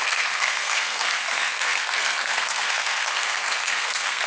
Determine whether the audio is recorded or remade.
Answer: remade